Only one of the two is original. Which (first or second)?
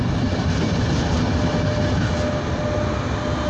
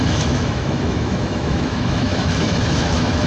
first